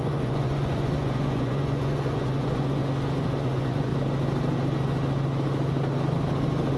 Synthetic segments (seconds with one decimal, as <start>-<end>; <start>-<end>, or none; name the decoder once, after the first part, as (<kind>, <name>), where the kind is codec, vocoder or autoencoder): 0.0-2.8 (vocoder, Vocos); 3.4-3.9